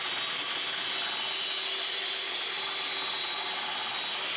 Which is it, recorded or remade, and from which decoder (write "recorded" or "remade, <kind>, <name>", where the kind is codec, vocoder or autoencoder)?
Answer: recorded